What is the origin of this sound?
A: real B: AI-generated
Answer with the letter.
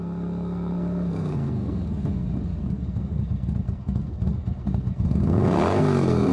B